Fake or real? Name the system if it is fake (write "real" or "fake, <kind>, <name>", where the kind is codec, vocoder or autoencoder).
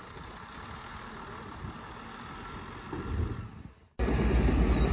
real